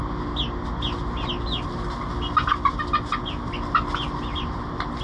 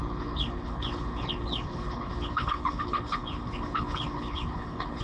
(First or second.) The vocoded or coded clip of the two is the second